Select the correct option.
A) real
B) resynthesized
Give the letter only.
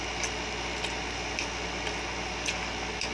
A